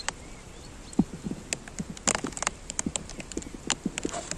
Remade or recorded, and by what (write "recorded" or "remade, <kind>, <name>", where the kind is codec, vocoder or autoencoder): recorded